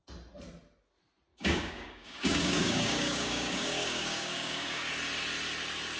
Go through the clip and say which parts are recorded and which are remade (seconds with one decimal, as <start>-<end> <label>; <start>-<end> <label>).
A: 0.0-1.3 recorded; 1.3-4.9 remade; 4.9-6.0 recorded